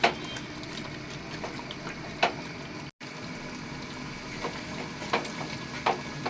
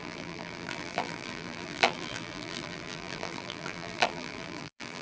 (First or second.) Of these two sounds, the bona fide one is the first